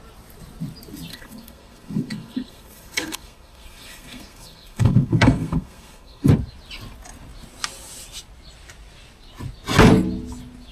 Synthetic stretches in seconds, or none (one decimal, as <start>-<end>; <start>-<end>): 1.1-6.3